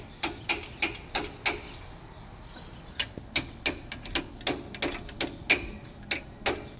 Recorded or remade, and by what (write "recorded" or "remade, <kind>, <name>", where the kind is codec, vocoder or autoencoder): recorded